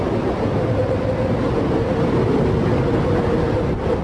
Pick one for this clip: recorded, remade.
recorded